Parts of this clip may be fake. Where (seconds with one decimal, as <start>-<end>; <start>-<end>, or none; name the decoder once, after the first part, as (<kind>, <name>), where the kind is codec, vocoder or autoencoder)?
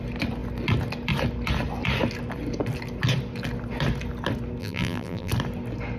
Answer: 4.6-5.3 (vocoder, BigVGAN v2)